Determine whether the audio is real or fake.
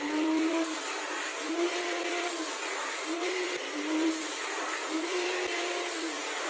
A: fake